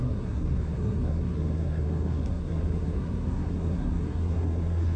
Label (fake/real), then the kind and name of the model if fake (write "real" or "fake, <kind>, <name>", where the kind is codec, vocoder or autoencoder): fake, codec, SNAC